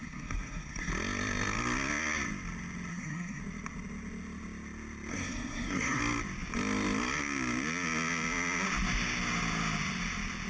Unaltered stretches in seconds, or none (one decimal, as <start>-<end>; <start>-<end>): 0.9-2.9; 3.4-5.1; 6.0-10.5